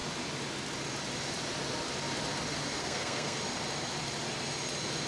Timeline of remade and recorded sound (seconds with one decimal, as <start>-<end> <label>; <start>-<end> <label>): 0.0-2.8 recorded; 2.8-3.4 remade; 3.4-5.1 recorded